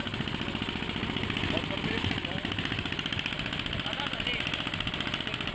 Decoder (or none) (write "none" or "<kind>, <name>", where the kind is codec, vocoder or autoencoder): none